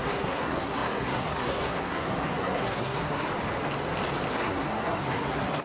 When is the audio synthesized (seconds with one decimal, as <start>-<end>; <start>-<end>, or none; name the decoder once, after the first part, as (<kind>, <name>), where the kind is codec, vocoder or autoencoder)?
0.0-3.3 (codec, SNAC); 4.3-5.6